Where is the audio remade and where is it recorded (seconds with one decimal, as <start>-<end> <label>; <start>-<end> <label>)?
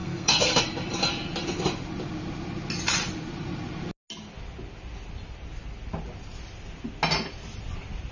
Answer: 0.0-0.6 remade; 0.6-8.1 recorded